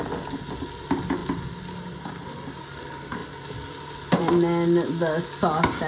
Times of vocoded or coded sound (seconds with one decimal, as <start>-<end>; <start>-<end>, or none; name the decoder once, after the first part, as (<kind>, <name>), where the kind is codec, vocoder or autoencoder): 3.2-4.3 (vocoder, BigVGAN v2)